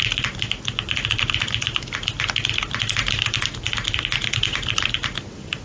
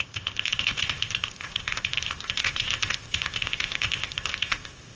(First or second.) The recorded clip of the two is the first